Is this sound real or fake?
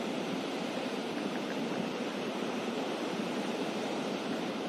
fake